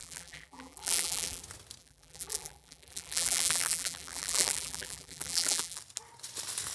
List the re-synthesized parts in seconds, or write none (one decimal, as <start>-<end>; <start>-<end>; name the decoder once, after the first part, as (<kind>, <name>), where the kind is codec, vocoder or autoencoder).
0.0-1.4 (vocoder, BigVGAN v2); 1.8-5.8